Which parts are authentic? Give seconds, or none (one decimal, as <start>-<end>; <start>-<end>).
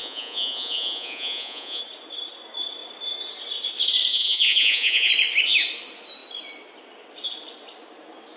1.8-4.1; 5.1-8.4